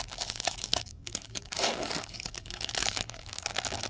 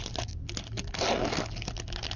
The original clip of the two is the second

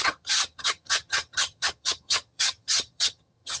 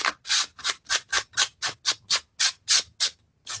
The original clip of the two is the second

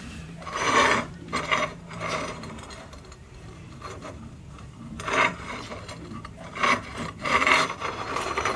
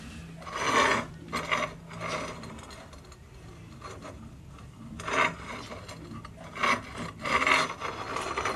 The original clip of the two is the second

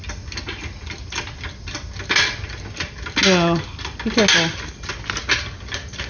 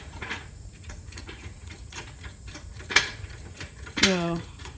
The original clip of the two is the first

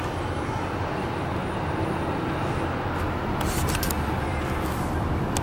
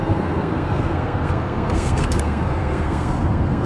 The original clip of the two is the first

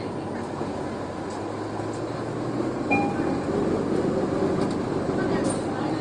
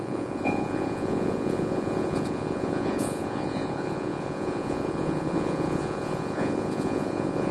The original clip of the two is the first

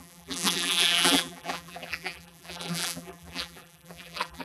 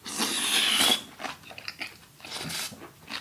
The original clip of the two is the second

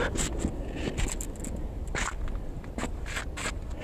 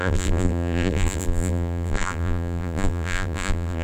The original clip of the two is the first